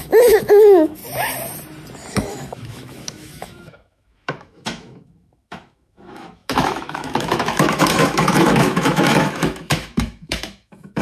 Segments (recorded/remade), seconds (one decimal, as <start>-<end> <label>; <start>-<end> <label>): 0.0-1.0 remade; 1.0-2.1 recorded; 2.1-11.0 remade